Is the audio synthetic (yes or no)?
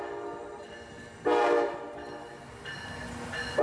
no